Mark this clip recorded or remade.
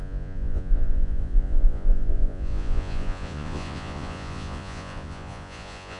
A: remade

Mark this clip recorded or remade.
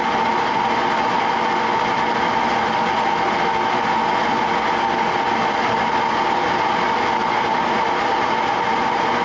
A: recorded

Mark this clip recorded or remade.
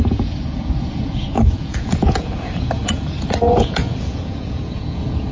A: remade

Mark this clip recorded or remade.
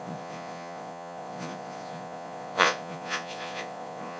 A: remade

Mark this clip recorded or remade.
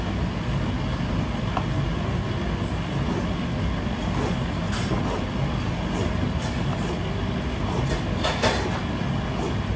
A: recorded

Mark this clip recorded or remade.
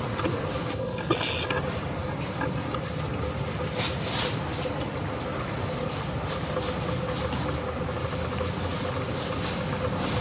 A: recorded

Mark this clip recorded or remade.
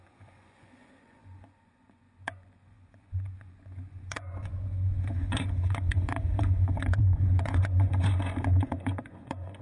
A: remade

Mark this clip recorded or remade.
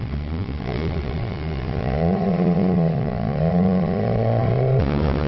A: remade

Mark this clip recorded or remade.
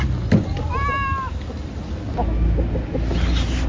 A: recorded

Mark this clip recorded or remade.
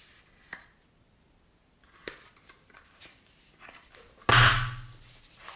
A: recorded